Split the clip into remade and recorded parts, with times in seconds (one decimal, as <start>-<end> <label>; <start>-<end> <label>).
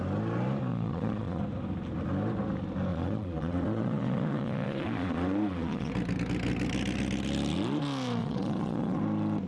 0.0-0.7 recorded; 0.7-1.4 remade; 1.4-2.9 recorded; 2.9-5.9 remade; 5.9-8.2 recorded; 8.2-9.0 remade; 9.0-9.5 recorded